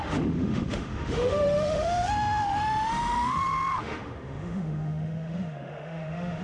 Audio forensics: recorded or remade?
remade